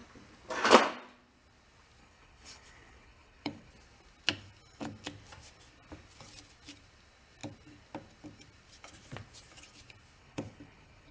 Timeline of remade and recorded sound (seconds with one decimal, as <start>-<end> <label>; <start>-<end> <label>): 0.0-2.0 recorded; 2.0-3.7 remade; 3.7-10.2 recorded; 10.2-11.1 remade